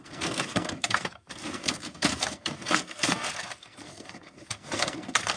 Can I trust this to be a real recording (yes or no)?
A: no